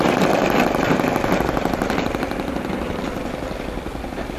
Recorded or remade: recorded